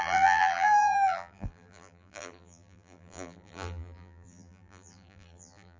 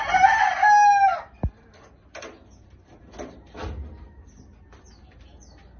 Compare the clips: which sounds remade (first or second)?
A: first